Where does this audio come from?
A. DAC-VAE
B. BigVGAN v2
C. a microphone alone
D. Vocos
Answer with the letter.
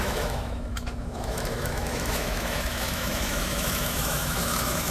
A